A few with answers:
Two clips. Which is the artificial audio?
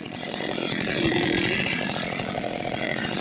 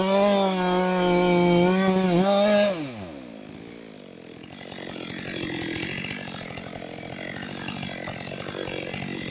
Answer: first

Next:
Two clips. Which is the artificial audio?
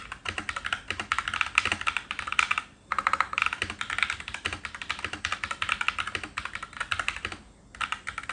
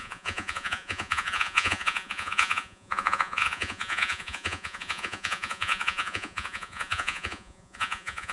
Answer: second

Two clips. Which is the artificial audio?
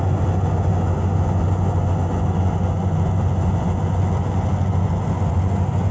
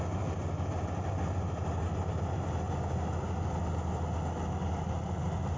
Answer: first